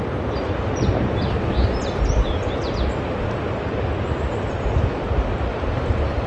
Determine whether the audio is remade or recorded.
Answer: recorded